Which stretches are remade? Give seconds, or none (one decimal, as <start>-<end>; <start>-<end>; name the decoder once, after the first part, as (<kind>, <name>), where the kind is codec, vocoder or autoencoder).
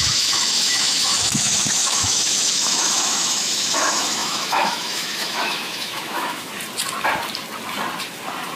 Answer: 0.0-6.5 (autoencoder, DAC-VAE)